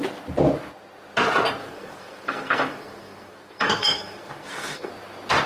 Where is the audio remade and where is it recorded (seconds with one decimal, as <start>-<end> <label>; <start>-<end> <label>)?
0.0-1.6 recorded; 1.6-4.9 remade; 4.9-5.5 recorded